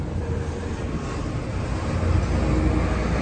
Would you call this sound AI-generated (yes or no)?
no